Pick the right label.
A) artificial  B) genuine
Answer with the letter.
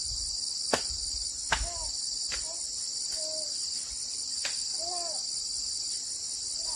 B